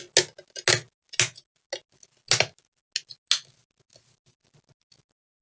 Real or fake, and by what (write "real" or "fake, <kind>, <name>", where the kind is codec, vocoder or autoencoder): real